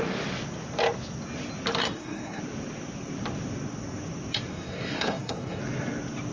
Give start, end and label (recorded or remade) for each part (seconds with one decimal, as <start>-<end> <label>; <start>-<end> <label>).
0.0-1.8 recorded; 1.8-2.4 remade; 2.4-4.5 recorded; 4.5-5.6 remade; 5.6-6.3 recorded